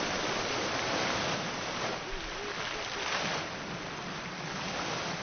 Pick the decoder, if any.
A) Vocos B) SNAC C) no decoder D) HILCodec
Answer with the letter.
C